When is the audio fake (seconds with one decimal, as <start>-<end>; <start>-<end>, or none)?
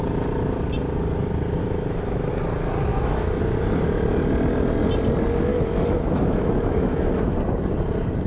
1.6-2.3; 2.9-3.4; 5.5-7.1